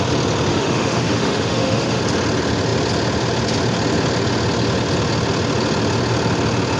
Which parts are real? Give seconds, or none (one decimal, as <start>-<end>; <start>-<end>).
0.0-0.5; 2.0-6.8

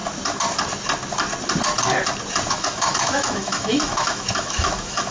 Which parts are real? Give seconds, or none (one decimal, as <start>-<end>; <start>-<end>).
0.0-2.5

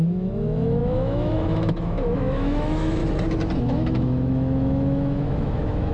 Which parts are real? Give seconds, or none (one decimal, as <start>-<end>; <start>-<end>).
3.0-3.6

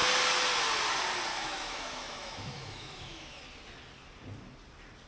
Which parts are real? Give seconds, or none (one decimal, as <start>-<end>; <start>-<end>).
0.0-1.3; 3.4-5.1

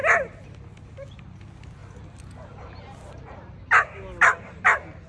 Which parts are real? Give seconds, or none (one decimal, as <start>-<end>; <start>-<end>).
0.0-5.1

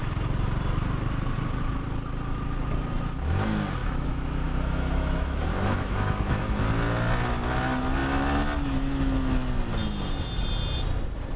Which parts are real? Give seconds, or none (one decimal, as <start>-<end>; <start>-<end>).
0.0-3.8; 6.4-11.4

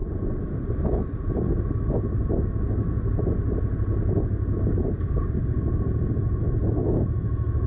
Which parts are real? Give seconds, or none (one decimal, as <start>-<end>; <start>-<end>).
0.0-6.8

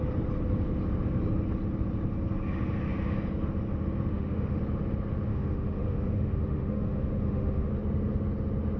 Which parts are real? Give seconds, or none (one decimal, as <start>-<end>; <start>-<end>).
0.0-4.1; 4.6-5.3; 7.7-8.8